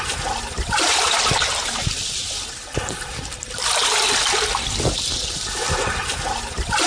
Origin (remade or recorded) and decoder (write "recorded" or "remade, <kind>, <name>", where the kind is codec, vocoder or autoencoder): recorded